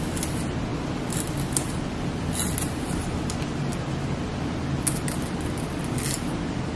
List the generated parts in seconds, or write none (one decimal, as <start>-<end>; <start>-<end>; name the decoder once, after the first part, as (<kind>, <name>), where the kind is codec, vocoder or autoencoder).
none